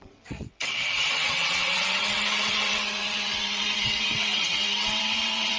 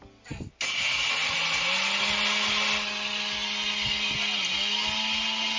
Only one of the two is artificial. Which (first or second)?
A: first